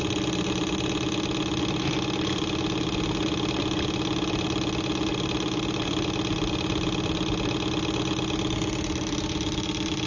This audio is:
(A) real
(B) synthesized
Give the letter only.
A